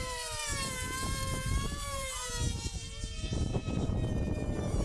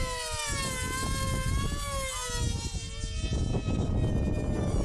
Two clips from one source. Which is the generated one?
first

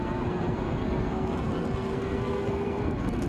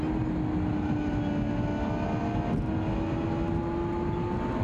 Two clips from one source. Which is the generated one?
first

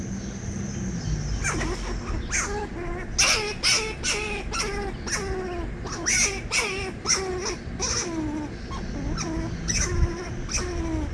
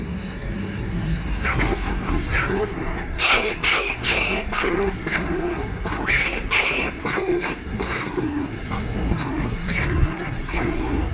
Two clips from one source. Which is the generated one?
second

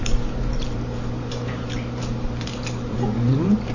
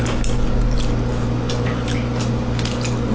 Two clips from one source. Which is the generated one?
first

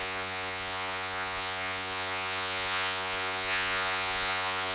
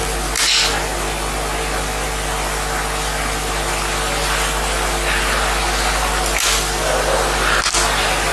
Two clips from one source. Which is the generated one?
first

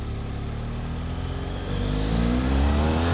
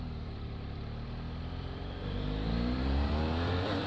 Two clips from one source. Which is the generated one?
second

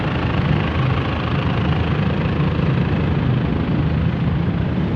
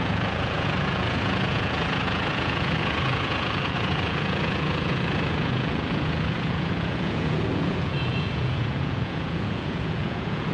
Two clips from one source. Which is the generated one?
second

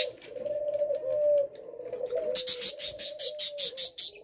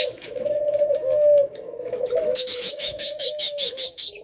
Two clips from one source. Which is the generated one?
second